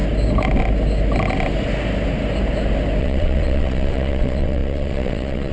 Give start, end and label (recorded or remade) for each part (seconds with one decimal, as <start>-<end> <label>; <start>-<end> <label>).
0.0-3.0 recorded; 3.0-5.5 remade